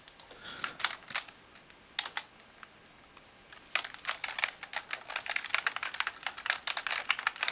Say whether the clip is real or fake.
real